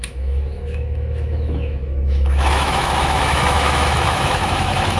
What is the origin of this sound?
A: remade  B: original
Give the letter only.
A